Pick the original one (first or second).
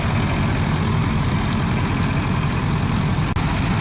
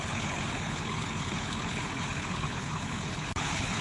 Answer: first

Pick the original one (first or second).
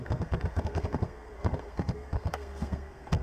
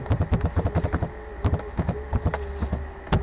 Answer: second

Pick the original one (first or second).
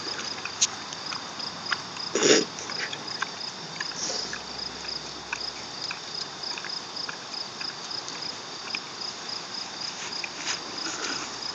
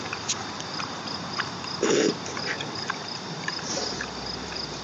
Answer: first